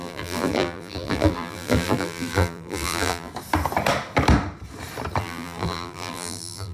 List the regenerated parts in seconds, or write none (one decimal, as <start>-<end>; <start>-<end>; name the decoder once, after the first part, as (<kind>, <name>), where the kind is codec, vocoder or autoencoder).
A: 0.0-3.3 (vocoder, BigVGAN v2); 5.2-6.7